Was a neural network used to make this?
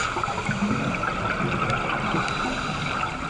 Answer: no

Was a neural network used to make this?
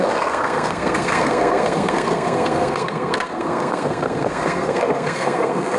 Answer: yes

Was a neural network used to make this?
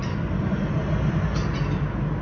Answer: no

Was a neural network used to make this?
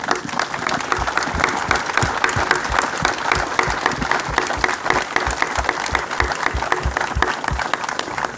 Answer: no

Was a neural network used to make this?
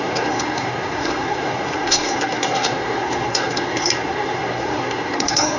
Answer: yes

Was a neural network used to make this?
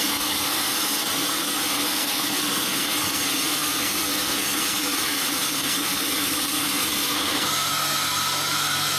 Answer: yes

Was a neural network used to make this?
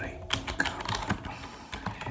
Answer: no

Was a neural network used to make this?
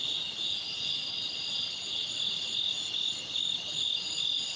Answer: no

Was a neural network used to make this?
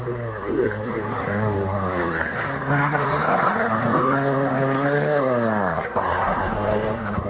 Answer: yes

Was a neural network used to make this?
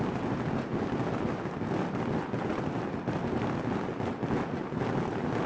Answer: no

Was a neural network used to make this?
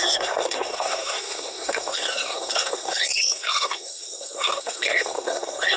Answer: yes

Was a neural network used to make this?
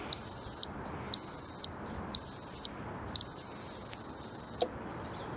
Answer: no